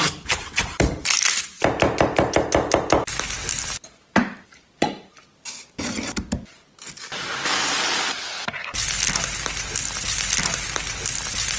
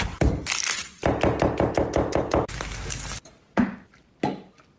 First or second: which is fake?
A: first